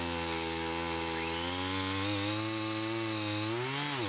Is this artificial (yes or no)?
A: no